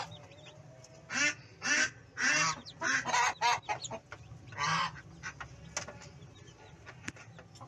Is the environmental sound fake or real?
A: real